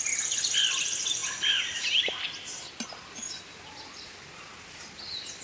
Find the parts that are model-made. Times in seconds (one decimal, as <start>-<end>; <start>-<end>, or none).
none